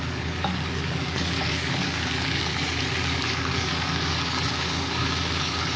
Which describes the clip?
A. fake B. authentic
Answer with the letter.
A